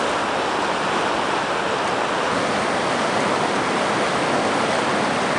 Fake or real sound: real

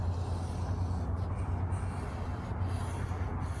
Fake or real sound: real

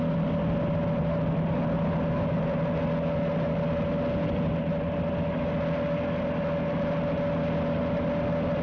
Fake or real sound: real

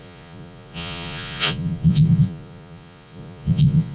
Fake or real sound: fake